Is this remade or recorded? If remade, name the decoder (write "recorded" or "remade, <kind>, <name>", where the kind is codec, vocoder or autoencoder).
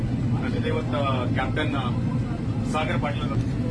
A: recorded